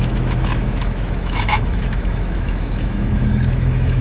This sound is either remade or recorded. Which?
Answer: remade